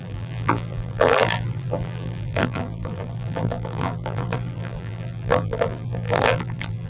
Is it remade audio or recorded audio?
remade